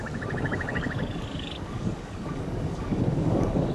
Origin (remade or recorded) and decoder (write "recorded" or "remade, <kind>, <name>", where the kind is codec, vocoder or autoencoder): remade, codec, DAC